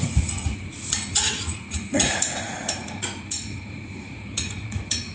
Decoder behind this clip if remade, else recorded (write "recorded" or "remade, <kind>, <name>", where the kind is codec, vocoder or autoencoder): remade, vocoder, Vocos